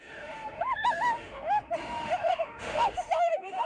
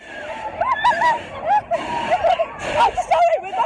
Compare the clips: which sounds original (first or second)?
second